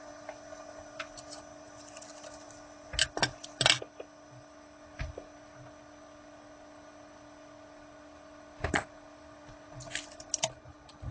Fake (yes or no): no